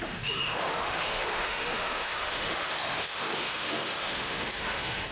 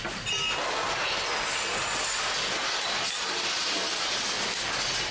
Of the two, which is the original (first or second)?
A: second